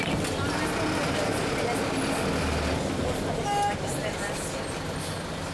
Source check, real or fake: real